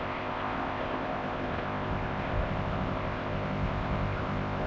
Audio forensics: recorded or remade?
remade